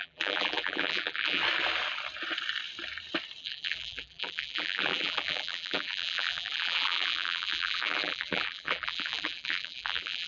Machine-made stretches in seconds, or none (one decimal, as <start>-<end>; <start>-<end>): 0.0-1.4; 3.4-10.3